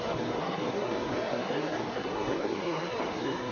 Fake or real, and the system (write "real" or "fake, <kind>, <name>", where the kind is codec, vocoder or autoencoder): fake, codec, SNAC